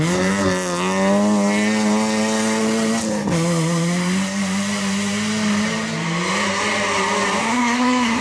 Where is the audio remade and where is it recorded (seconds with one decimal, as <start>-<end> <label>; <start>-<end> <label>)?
0.0-7.4 recorded; 7.4-8.2 remade